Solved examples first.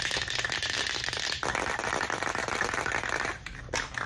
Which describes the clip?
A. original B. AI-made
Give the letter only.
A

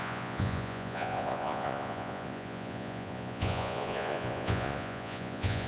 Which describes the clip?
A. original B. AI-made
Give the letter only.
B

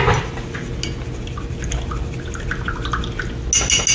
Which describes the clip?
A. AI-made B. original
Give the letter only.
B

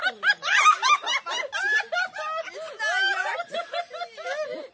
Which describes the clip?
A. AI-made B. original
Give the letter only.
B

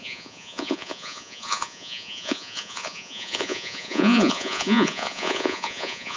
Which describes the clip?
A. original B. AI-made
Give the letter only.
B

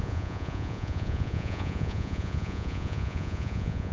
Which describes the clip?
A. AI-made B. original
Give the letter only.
A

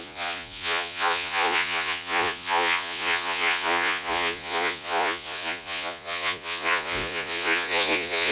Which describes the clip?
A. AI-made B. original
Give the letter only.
A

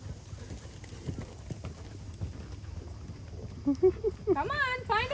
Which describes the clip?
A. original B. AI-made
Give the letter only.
A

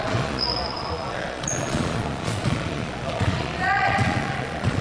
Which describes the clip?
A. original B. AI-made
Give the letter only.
B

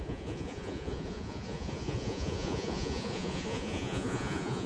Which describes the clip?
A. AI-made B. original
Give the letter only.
A